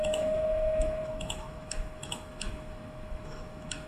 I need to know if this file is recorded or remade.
remade